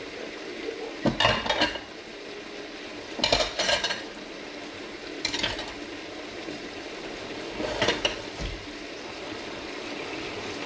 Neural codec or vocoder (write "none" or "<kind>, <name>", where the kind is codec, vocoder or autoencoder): none